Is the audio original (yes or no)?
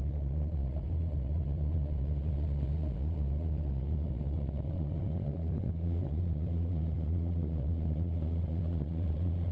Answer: no